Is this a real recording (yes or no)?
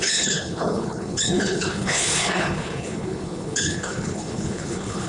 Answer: no